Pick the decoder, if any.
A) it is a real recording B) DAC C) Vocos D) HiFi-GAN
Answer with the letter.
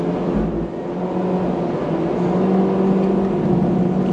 A